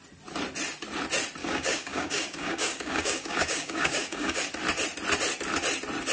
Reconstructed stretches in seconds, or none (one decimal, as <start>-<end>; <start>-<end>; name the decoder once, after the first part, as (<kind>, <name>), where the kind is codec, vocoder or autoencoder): 1.4-4.4 (codec, DAC)